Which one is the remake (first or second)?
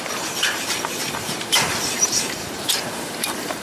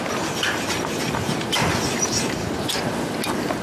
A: first